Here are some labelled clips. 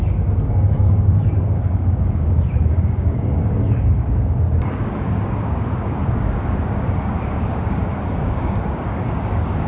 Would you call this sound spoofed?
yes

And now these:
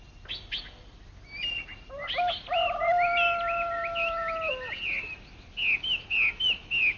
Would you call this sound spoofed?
no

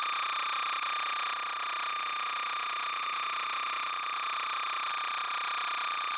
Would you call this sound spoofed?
yes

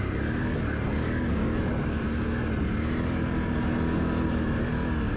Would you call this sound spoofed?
no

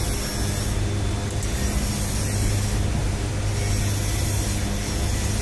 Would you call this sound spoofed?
no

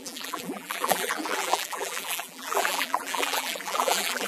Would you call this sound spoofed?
yes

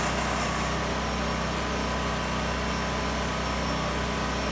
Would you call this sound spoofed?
no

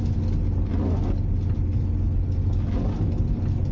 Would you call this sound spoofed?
no